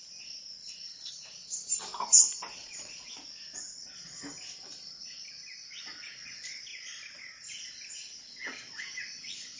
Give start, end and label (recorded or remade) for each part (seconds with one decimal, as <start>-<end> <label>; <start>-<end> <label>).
0.0-0.9 recorded; 0.9-1.8 remade; 1.8-2.6 recorded; 2.6-3.2 remade; 3.2-9.6 recorded